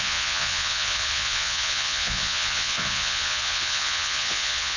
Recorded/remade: remade